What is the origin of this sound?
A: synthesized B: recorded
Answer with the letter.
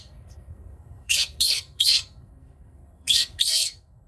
A